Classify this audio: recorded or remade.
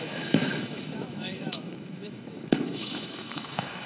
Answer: remade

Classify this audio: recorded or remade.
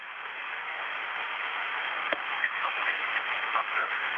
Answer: remade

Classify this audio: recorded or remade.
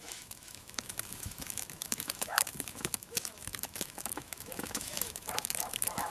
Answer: remade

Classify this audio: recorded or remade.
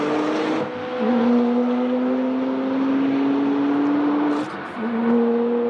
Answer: recorded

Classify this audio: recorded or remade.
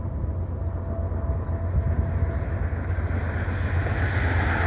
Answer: recorded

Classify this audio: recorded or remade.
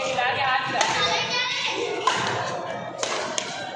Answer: recorded